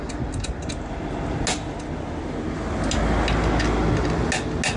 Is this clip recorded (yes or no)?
yes